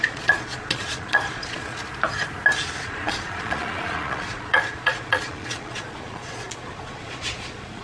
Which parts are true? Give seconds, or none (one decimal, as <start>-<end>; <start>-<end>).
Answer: 1.8-2.8